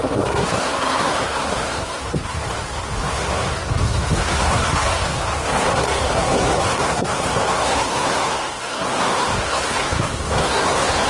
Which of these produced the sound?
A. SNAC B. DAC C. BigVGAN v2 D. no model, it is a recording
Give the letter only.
A